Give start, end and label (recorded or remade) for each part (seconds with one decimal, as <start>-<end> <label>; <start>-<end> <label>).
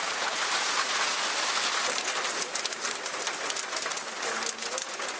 0.0-1.2 remade; 1.2-5.2 recorded